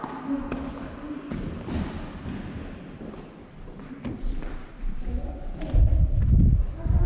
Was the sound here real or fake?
real